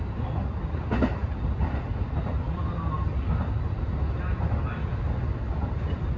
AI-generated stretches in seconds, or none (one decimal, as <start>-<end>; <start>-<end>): none